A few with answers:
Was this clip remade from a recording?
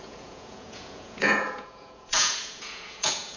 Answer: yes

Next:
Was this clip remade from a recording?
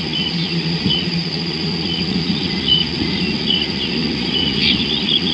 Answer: yes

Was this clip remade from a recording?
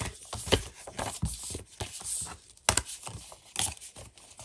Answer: no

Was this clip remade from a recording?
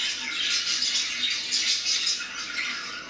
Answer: no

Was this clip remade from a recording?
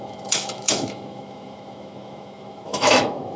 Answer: yes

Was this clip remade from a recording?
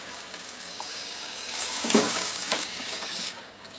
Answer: yes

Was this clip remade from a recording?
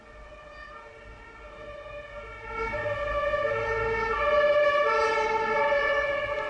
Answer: no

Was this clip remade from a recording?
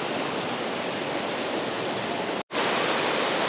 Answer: no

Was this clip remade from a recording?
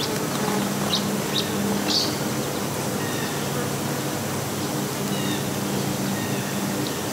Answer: no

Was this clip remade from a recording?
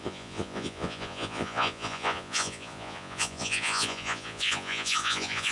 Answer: yes